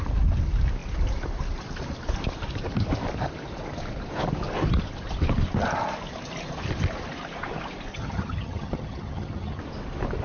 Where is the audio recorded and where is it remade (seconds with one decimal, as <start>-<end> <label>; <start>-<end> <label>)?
0.0-7.9 recorded; 7.9-9.6 remade; 9.6-10.2 recorded